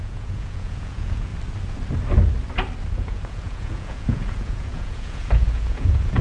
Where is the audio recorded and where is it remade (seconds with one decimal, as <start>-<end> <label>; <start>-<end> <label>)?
0.0-1.3 remade; 1.3-2.9 recorded; 2.9-6.2 remade